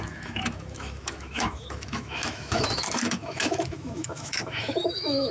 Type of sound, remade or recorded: remade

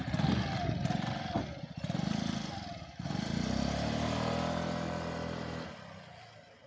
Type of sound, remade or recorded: recorded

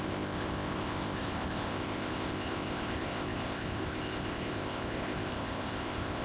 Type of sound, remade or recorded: remade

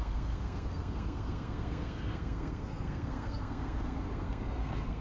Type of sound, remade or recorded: remade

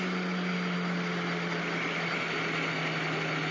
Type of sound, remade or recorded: recorded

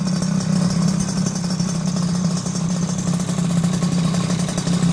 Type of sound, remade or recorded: recorded